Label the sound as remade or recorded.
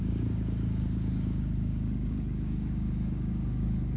remade